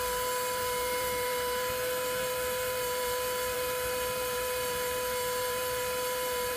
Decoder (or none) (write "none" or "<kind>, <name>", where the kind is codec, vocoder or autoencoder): vocoder, BigVGAN v2